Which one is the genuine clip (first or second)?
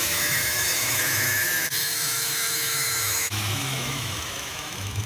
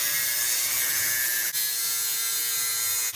second